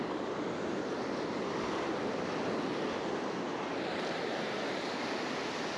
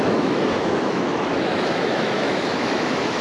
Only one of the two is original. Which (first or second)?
first